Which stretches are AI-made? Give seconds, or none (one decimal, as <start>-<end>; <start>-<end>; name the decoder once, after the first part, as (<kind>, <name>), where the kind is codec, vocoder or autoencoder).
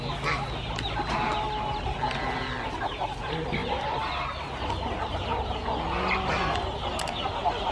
none